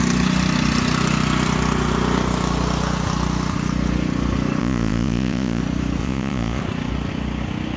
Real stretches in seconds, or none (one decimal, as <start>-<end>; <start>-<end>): 0.0-4.6; 5.6-6.0; 6.6-7.8